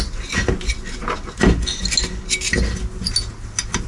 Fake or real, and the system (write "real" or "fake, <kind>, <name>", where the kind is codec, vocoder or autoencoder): real